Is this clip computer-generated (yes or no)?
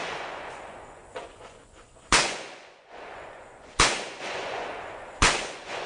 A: yes